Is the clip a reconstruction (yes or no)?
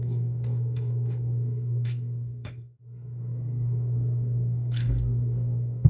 yes